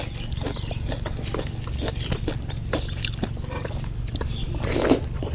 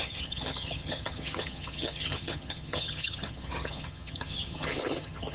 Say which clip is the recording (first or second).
first